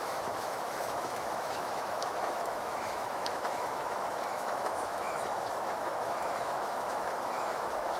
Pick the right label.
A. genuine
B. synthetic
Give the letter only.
B